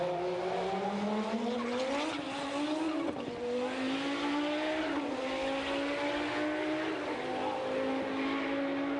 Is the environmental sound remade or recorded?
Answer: recorded